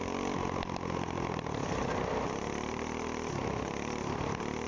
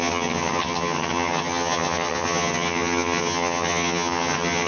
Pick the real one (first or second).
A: first